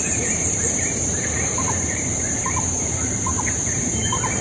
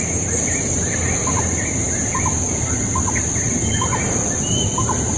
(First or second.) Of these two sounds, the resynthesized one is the first